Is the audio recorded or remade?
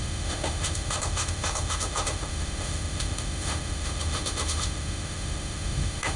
remade